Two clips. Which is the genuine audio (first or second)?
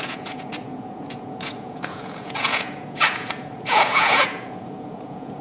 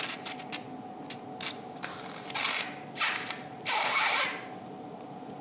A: second